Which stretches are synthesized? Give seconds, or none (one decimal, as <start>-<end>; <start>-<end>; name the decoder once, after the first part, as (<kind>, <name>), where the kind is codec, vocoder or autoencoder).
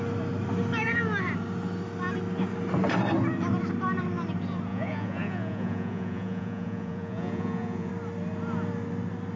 4.7-7.9 (vocoder, Vocos)